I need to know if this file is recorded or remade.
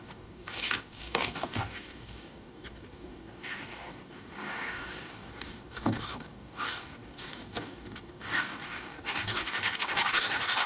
remade